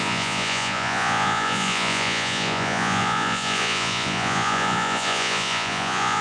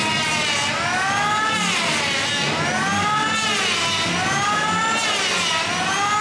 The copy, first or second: first